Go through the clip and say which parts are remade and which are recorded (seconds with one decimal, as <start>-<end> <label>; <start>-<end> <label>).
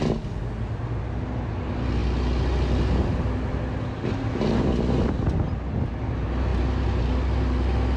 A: 0.0-8.0 recorded